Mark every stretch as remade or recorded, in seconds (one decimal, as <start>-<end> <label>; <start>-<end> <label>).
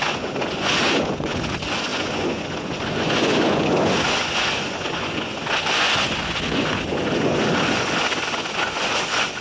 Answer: 0.0-9.4 remade